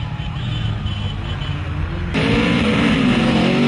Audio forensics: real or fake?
real